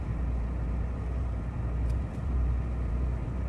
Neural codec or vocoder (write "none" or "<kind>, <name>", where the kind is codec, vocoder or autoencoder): none